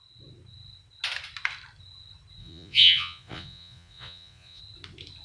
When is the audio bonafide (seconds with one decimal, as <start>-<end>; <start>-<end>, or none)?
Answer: 0.0-2.4; 4.6-5.2